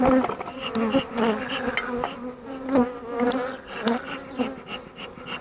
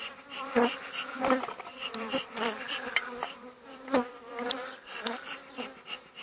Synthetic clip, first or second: second